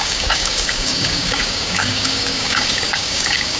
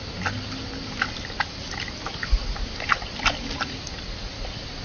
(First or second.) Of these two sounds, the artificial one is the first